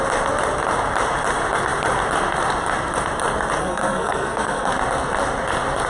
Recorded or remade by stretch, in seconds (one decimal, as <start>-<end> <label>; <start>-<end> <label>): 0.0-3.6 recorded; 3.6-4.7 remade; 4.7-5.9 recorded